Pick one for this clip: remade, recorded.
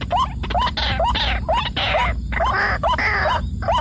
recorded